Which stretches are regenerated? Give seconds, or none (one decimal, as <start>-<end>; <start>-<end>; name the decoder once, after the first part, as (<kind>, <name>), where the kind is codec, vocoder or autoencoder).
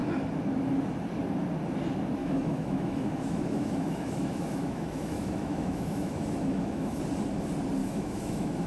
2.2-7.0 (autoencoder, DAC-VAE); 7.8-8.7